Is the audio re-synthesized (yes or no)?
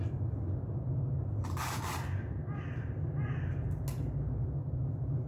no